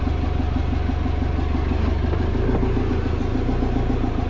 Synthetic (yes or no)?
no